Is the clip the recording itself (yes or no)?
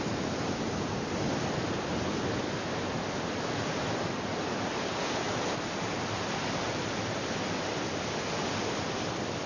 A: no